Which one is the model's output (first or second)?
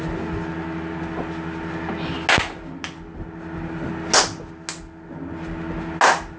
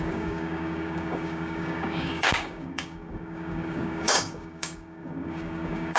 second